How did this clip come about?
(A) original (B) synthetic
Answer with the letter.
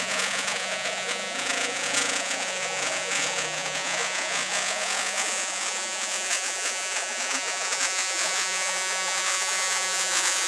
B